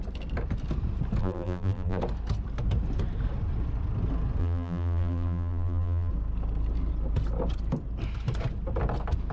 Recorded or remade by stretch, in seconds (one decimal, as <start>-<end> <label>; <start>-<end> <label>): 0.0-1.2 recorded; 1.2-2.0 remade; 2.0-4.4 recorded; 4.4-6.1 remade; 6.1-9.3 recorded